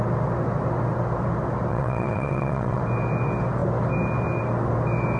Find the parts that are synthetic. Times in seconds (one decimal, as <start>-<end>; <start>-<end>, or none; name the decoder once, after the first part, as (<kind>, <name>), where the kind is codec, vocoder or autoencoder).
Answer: 1.7-2.8 (vocoder, WaveNeXt)